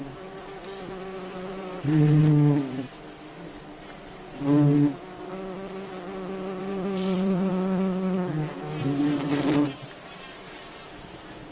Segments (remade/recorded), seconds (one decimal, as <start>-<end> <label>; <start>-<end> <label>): 0.0-2.2 remade; 2.2-6.6 recorded; 6.6-7.5 remade; 7.5-9.0 recorded; 9.0-11.5 remade